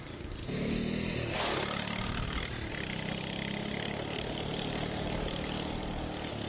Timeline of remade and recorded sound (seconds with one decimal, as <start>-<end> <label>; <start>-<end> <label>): 0.0-4.1 recorded; 4.1-5.8 remade; 5.8-6.5 recorded